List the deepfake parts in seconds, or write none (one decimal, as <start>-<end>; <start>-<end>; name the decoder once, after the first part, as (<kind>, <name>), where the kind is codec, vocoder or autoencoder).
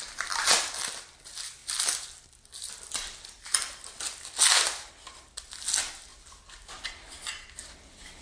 none